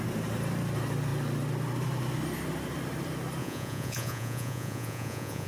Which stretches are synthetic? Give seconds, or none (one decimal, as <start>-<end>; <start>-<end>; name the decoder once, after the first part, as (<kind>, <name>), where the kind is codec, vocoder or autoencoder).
3.4-5.5 (vocoder, Vocos)